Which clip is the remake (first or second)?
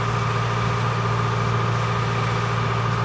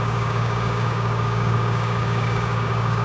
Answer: second